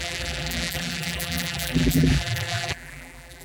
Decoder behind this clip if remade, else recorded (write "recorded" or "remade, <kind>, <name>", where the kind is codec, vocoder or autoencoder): remade, vocoder, BigVGAN v2